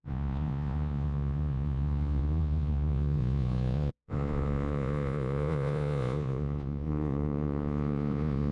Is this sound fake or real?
fake